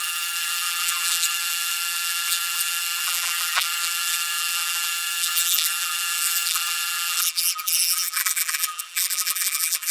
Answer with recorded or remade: remade